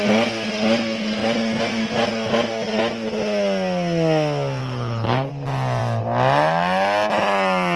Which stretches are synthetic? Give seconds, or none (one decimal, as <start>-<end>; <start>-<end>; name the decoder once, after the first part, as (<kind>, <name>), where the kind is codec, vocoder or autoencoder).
4.6-5.3 (codec, HILCodec)

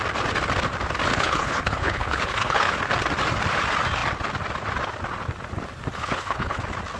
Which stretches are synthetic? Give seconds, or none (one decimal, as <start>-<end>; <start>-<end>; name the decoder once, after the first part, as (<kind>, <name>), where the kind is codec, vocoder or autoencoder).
1.1-2.8 (codec, HILCodec); 5.9-6.6

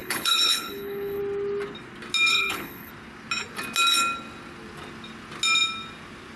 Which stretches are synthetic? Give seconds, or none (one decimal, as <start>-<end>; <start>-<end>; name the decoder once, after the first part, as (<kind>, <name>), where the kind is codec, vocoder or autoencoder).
0.0-1.2 (codec, HILCodec); 2.3-2.9

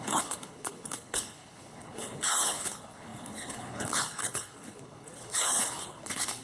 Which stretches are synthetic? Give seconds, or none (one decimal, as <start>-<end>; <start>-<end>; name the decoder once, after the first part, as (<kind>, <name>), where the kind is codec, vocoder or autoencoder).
0.0-6.4 (codec, HILCodec)

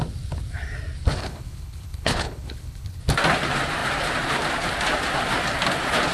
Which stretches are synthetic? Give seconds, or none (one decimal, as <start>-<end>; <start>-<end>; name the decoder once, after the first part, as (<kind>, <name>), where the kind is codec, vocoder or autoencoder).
1.2-3.0 (codec, HILCodec)

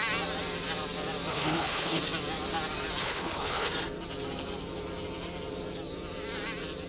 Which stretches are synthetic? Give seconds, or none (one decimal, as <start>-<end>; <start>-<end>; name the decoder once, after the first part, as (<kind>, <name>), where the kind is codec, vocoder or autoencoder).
1.3-2.0 (codec, HILCodec); 3.0-3.7